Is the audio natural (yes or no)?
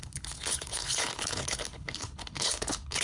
no